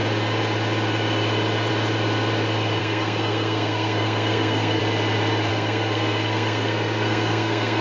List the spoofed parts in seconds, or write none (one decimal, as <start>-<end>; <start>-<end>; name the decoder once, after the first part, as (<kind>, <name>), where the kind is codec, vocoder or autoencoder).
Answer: 2.8-4.8 (codec, SNAC); 5.5-7.8